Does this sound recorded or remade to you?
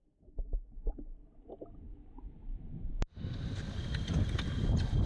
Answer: recorded